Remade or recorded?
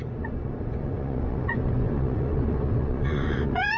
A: remade